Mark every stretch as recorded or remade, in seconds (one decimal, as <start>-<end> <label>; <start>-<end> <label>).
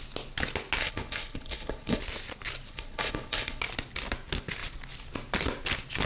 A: 0.0-0.8 recorded; 0.8-2.0 remade; 2.0-2.7 recorded; 2.7-3.6 remade; 3.6-6.1 recorded